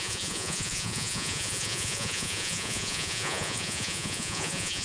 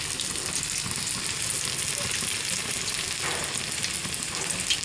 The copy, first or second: first